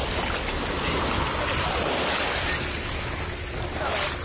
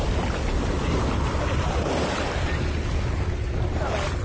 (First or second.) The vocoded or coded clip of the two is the second